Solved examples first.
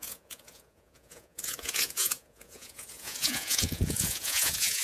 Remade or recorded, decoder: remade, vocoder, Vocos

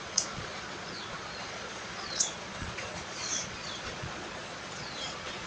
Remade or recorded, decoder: remade, vocoder, Vocos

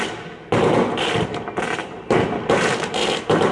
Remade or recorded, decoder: recorded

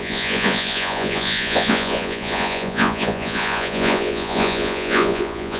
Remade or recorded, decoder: remade, vocoder, Vocos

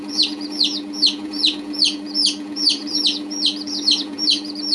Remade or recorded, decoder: remade, vocoder, Vocos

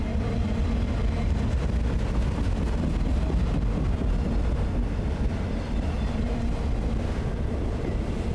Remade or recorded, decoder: recorded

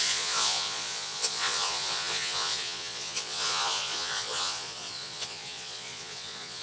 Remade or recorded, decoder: remade, vocoder, Vocos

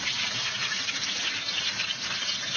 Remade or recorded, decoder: recorded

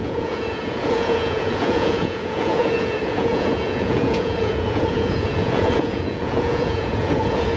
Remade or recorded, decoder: remade, vocoder, Vocos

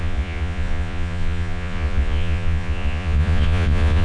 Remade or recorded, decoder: remade, vocoder, Vocos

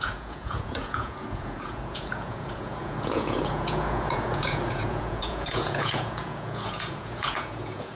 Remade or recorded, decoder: remade, vocoder, Vocos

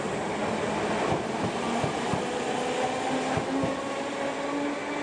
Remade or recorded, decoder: recorded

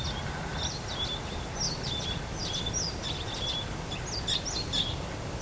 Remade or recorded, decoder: recorded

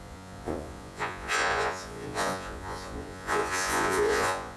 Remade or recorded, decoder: remade, vocoder, Vocos